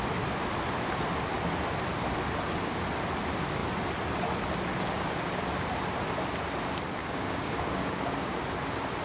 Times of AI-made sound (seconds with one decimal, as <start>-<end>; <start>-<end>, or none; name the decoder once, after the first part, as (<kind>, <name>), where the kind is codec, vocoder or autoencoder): 7.0-8.4 (codec, DAC)